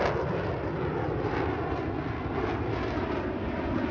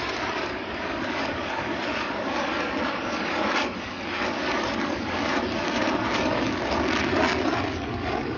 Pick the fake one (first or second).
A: second